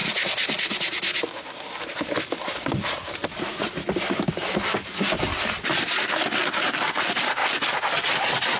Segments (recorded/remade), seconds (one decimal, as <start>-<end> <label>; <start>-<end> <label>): 0.0-2.5 recorded; 2.5-3.2 remade; 3.2-6.7 recorded; 6.7-7.4 remade; 7.4-8.2 recorded; 8.2-8.6 remade